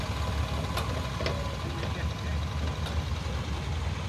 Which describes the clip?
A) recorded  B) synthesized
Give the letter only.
A